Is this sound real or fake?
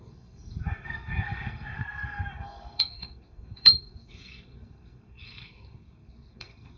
fake